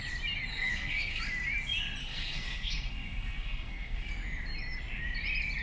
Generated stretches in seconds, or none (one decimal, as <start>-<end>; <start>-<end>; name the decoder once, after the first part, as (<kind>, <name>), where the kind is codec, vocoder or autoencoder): 0.5-1.2 (codec, SNAC); 2.0-4.1